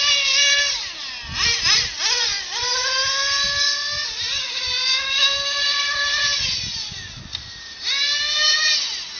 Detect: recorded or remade recorded